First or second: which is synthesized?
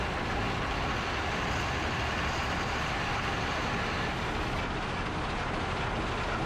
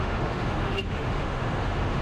second